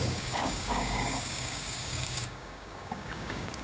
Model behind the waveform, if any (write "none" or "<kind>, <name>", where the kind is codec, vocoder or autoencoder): codec, DAC